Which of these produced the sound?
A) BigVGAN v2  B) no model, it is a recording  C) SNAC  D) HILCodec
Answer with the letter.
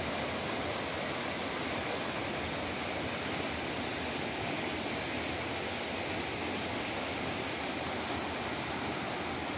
B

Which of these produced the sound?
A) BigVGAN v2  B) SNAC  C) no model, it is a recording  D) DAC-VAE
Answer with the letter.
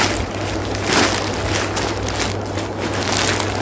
C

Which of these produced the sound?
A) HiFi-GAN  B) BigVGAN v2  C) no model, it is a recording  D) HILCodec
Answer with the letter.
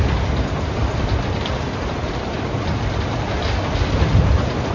C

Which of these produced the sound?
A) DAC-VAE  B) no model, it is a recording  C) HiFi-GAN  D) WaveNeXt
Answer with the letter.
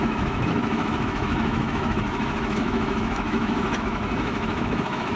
A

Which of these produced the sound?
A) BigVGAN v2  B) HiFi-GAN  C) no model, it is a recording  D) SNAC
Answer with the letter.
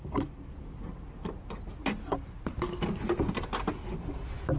C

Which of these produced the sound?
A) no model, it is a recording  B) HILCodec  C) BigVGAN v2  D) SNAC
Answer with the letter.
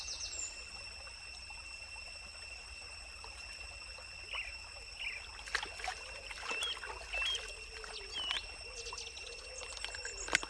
A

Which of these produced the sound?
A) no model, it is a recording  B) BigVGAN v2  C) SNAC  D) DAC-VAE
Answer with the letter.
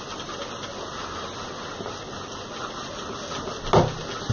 A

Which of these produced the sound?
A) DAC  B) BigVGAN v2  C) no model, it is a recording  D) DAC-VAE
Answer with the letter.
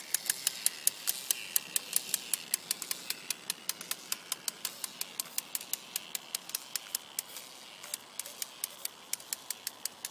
C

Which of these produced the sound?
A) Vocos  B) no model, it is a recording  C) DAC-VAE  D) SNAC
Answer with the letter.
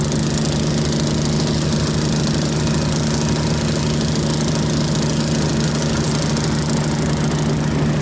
B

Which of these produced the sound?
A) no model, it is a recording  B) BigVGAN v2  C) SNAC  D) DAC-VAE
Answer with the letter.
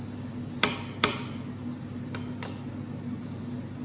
A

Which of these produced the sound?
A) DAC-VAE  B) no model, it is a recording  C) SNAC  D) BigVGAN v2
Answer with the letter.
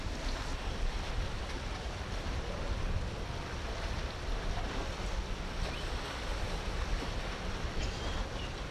B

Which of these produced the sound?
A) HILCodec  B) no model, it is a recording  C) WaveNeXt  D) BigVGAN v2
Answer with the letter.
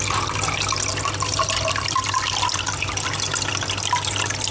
B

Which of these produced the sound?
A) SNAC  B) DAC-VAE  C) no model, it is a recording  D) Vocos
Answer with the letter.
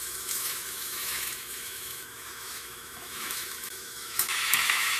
B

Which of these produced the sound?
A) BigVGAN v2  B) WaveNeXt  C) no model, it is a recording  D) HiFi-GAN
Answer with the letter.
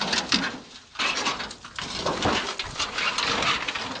C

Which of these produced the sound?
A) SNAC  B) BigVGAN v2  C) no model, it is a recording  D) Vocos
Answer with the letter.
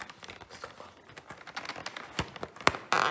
C